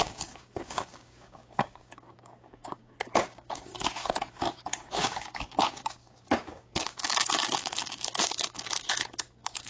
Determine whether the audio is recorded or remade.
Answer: remade